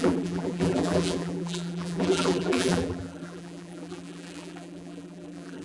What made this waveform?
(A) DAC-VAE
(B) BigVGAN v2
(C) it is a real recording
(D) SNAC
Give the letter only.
B